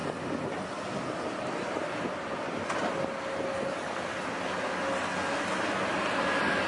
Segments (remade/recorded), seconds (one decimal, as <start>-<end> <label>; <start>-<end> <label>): 0.0-6.7 recorded